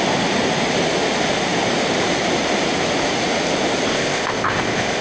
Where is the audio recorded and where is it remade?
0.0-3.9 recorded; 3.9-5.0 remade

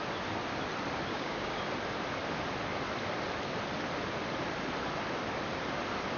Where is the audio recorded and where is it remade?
0.0-1.1 recorded; 1.1-1.6 remade; 1.6-6.2 recorded

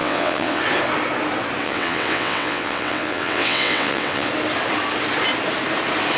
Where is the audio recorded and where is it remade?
0.0-0.6 remade; 0.6-1.6 recorded; 1.6-4.3 remade; 4.3-6.2 recorded

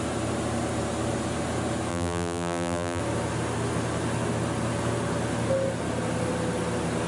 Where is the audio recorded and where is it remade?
0.0-1.9 recorded; 1.9-3.0 remade; 3.0-7.1 recorded